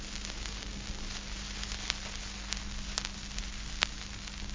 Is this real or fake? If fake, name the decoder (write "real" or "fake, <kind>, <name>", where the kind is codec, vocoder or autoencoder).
real